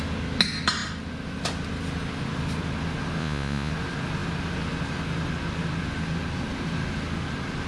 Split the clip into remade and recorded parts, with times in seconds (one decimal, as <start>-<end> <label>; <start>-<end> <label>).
0.0-3.2 recorded; 3.2-3.7 remade; 3.7-7.7 recorded

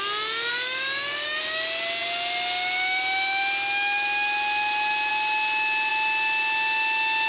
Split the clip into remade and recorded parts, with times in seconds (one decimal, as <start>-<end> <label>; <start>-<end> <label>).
0.0-0.5 recorded; 0.5-1.4 remade; 1.4-7.3 recorded

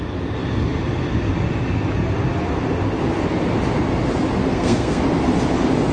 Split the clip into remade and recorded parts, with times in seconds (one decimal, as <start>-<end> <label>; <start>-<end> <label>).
0.0-4.4 recorded; 4.4-5.0 remade; 5.0-5.9 recorded

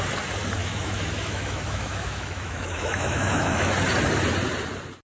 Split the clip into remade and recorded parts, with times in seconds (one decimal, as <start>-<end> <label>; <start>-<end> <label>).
0.0-0.6 recorded; 0.6-3.7 remade; 3.7-5.1 recorded